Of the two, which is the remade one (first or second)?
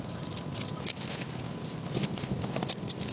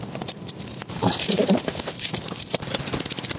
second